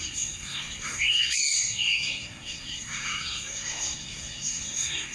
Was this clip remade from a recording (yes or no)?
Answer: yes